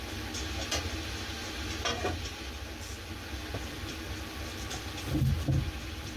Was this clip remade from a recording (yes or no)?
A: no